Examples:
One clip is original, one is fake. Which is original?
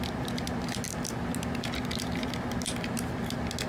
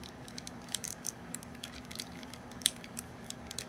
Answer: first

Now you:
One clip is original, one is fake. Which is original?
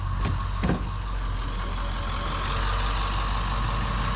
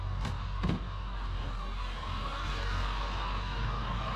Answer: first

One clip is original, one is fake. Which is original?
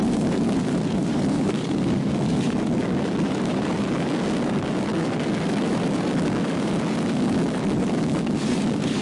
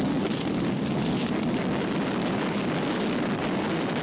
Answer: second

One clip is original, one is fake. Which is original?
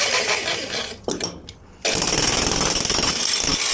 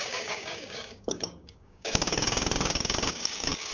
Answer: first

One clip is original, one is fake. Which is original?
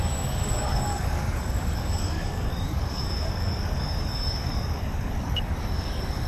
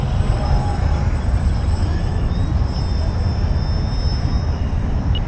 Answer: second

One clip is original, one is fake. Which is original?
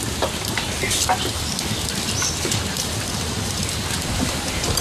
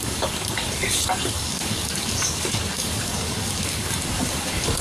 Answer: first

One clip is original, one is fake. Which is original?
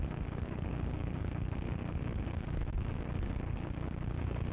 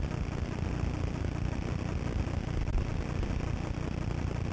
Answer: second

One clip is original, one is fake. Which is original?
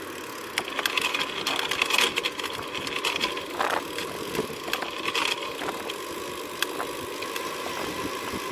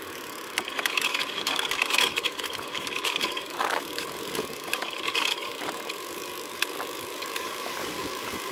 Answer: first